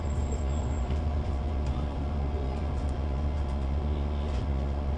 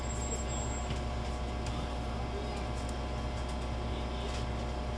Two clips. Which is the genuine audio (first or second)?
second